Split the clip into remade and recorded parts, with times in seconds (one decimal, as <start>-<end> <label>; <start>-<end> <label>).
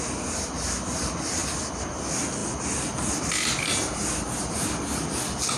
0.0-5.6 recorded